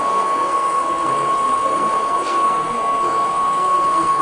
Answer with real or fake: fake